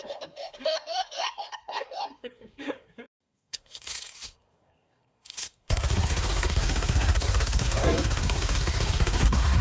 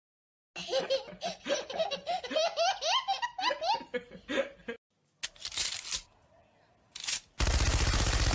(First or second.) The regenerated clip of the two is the first